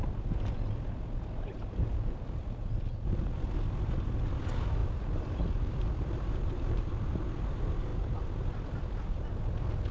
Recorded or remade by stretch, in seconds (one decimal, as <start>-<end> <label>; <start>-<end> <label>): 0.0-1.5 recorded; 1.5-2.6 remade; 2.6-4.8 recorded; 4.8-7.4 remade; 7.4-9.9 recorded